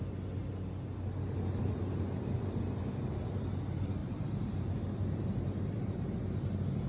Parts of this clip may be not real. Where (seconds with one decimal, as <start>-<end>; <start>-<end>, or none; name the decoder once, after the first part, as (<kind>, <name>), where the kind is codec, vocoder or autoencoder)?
4.0-5.1 (vocoder, BigVGAN v2)

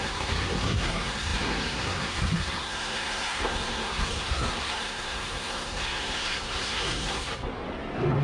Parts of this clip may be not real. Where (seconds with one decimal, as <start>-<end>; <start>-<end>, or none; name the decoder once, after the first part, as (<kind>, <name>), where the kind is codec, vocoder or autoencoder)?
0.0-7.3 (codec, SNAC)

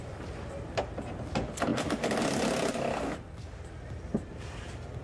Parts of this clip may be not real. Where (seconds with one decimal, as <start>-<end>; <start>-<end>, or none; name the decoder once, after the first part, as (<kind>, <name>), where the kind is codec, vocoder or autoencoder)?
none

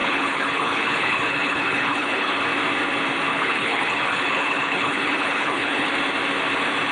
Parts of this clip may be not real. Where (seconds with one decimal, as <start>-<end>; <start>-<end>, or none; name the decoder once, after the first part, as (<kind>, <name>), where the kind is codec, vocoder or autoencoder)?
0.0-2.4 (codec, HILCodec); 3.3-5.9

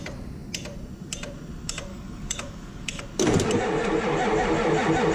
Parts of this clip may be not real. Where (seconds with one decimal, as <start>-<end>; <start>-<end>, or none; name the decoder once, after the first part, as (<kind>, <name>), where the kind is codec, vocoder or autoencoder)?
1.9-3.0 (codec, DAC)